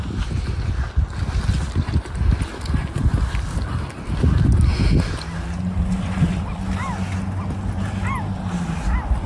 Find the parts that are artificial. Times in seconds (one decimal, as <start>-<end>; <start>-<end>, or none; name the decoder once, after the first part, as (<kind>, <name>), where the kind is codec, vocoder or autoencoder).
none